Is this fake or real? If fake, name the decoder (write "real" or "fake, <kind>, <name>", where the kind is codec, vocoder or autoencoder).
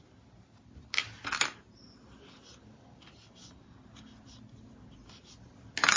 real